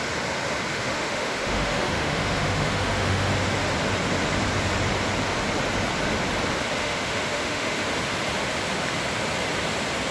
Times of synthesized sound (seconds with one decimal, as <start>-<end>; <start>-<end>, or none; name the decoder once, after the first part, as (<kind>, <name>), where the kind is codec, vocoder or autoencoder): 0.7-3.3 (autoencoder, DAC-VAE); 6.8-7.9